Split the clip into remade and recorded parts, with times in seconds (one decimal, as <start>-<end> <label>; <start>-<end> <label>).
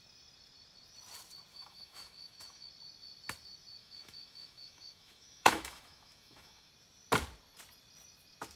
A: 0.0-1.5 recorded; 1.5-2.7 remade; 2.7-3.8 recorded; 3.8-6.7 remade; 6.7-8.6 recorded